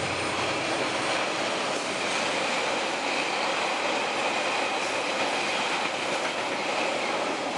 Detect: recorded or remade recorded